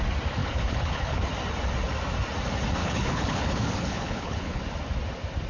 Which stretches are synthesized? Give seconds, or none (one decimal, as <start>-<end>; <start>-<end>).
0.4-1.3; 2.8-4.6